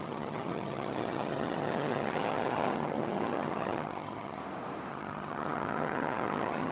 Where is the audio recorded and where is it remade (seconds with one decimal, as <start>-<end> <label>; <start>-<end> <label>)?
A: 0.0-4.4 remade; 4.4-4.9 recorded; 4.9-6.7 remade